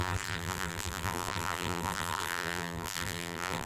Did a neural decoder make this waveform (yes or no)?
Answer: yes